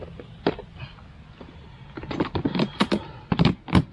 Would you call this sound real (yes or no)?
yes